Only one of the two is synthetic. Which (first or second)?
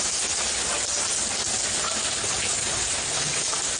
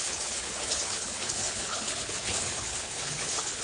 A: second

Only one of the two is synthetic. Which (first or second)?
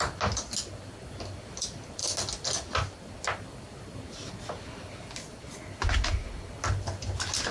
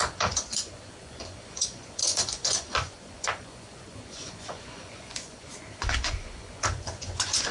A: second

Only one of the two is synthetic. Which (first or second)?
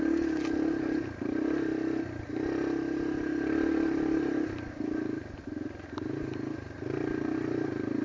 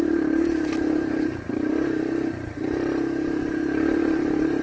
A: second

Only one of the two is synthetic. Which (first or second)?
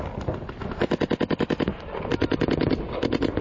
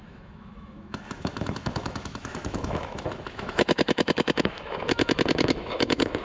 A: second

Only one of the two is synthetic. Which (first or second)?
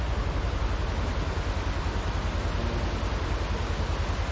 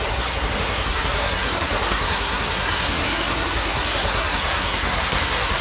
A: second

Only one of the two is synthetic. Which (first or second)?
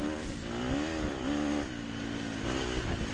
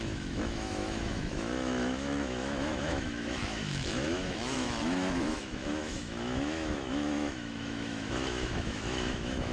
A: second